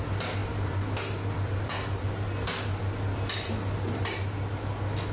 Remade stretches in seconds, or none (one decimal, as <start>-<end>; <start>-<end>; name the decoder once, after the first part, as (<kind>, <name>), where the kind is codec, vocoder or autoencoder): none